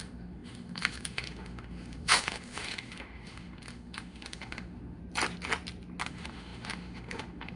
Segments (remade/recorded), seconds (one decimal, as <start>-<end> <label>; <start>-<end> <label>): 0.0-5.0 remade; 5.0-6.1 recorded; 6.1-7.6 remade